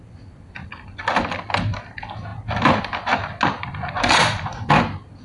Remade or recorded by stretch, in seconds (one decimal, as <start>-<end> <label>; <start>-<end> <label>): 0.0-5.2 recorded